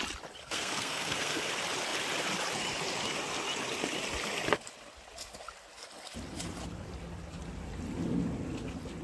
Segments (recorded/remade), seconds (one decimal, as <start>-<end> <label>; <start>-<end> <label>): 0.0-0.4 recorded; 0.4-1.5 remade; 1.5-9.0 recorded